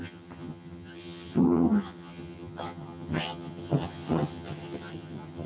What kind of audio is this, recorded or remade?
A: remade